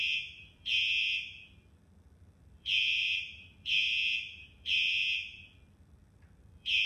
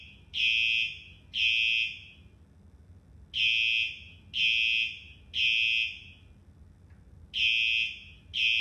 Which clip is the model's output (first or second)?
first